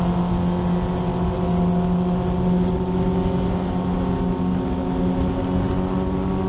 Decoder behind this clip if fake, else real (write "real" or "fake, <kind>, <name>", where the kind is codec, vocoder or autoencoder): real